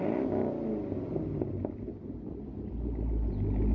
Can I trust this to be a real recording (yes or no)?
yes